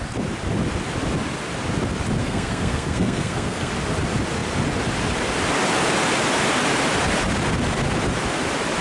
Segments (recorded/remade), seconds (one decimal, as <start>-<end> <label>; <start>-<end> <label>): 0.0-2.2 recorded; 2.2-3.7 remade; 3.7-8.8 recorded